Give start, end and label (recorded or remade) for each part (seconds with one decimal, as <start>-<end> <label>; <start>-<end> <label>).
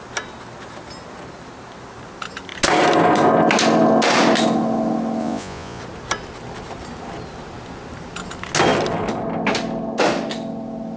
0.0-5.2 recorded; 5.2-5.8 remade; 5.8-11.0 recorded